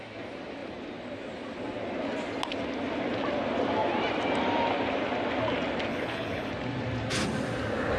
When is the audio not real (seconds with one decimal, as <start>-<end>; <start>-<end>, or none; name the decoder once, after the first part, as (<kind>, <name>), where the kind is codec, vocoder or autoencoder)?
5.9-6.5 (codec, HILCodec)